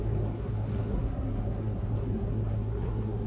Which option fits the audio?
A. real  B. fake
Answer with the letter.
B